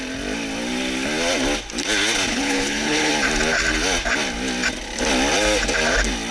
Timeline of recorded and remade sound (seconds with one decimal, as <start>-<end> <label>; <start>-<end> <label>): 0.0-2.3 recorded; 2.3-3.1 remade; 3.1-6.3 recorded